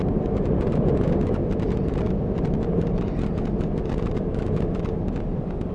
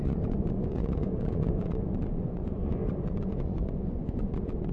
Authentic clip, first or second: first